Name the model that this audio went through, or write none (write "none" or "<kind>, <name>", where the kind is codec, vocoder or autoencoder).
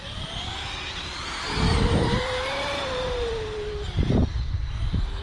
vocoder, BigVGAN v2